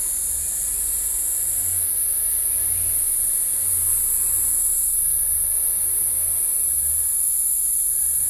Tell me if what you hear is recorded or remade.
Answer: recorded